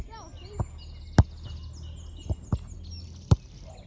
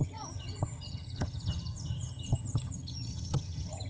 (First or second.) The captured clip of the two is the first